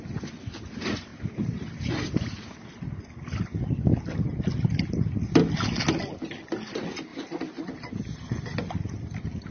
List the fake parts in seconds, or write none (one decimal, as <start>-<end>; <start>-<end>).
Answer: none